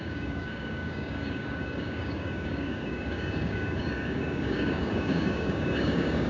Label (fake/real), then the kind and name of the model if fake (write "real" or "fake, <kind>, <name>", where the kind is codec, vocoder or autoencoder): fake, codec, DAC